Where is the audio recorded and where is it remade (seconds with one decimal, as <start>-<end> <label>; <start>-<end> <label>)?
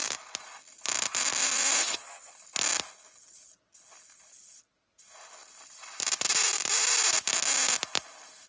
0.0-1.8 recorded; 1.8-2.3 remade; 2.3-8.5 recorded